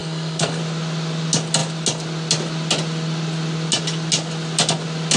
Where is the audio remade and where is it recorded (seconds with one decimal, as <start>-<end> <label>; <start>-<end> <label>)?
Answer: 0.0-0.6 remade; 0.6-5.2 recorded